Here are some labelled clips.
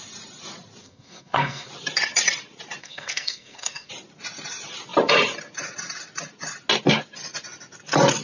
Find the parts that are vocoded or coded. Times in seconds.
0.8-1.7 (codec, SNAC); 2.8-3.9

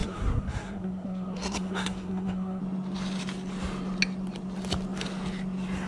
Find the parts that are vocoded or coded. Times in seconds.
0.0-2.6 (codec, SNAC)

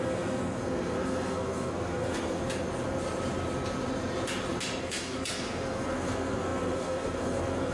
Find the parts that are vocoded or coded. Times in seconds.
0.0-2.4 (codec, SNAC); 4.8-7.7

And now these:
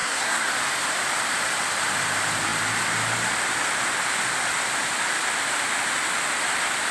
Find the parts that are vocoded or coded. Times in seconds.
0.0-0.5 (codec, SNAC)

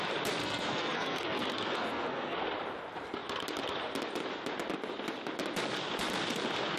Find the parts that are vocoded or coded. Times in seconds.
0.4-2.4 (codec, SNAC)